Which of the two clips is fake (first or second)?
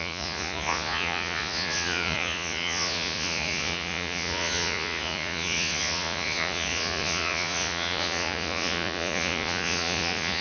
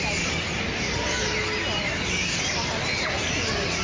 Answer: first